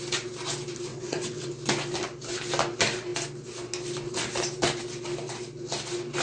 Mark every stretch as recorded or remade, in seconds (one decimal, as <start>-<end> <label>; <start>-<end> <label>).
0.0-0.9 recorded; 0.9-1.5 remade; 1.5-6.2 recorded